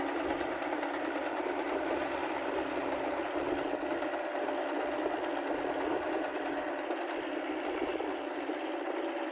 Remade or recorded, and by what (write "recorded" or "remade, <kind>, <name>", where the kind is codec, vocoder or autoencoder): recorded